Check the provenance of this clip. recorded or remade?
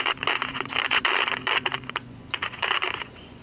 remade